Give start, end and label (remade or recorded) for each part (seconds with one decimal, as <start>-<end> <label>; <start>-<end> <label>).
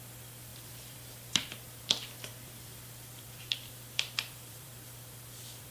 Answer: 0.0-0.5 recorded; 0.5-1.8 remade; 1.8-2.3 recorded; 2.3-5.7 remade